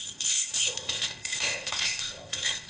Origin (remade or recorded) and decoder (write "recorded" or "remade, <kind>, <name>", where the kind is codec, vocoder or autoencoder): remade, codec, ZipCodec